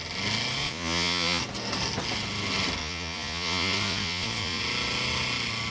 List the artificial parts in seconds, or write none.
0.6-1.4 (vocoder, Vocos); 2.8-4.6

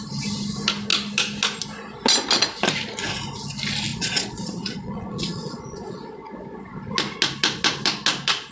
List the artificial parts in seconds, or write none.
3.9-6.9 (vocoder, Vocos)

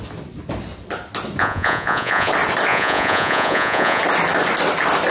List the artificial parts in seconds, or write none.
1.4-2.3 (vocoder, Vocos); 2.7-4.0

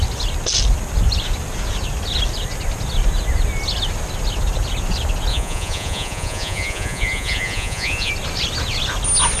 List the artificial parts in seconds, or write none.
5.3-8.1 (vocoder, Vocos)